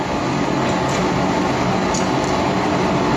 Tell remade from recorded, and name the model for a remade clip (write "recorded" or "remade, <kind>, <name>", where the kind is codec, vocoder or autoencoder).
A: recorded